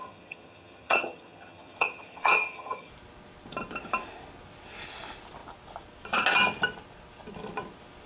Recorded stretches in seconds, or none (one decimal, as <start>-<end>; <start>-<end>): 2.9-8.1